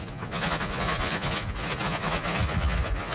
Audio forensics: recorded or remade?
remade